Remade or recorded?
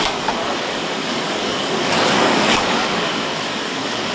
remade